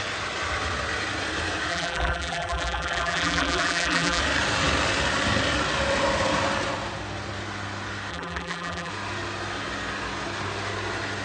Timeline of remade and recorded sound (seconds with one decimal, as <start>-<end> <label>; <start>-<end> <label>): 0.0-1.7 recorded; 1.7-4.2 remade; 4.2-8.1 recorded; 8.1-8.9 remade; 8.9-11.2 recorded